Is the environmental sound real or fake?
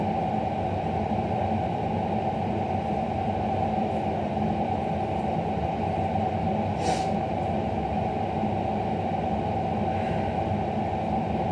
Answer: real